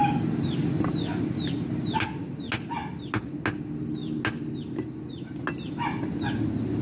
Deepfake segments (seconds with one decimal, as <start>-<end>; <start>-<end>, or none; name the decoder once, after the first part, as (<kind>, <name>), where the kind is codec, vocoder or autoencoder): none

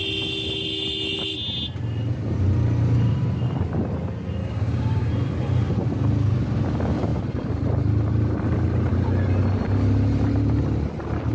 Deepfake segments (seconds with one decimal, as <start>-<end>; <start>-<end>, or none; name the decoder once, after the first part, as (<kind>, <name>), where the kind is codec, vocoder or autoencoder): 4.4-5.1 (codec, DAC)